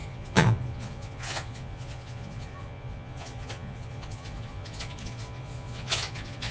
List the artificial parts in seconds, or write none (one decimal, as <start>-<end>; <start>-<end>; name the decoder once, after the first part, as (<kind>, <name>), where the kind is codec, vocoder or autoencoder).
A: 0.0-6.5 (vocoder, Vocos)